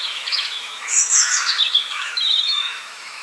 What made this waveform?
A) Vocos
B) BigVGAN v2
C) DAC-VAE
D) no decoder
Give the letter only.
C